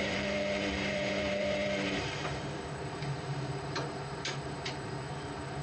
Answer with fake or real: fake